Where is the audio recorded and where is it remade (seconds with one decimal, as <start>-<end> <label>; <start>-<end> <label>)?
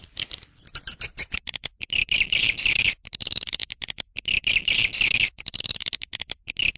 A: 0.0-6.8 recorded